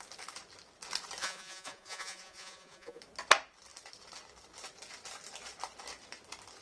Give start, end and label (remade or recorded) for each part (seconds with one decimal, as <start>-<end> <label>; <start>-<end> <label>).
0.0-1.2 recorded; 1.2-3.0 remade; 3.0-6.6 recorded